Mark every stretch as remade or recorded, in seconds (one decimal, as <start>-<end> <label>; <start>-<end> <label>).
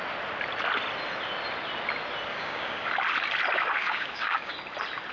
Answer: 0.0-2.3 recorded; 2.3-2.9 remade; 2.9-3.8 recorded; 3.8-4.5 remade; 4.5-5.1 recorded